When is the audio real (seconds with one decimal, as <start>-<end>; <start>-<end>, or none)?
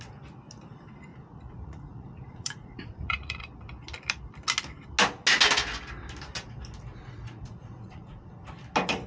0.0-1.1; 3.4-6.9; 8.4-9.1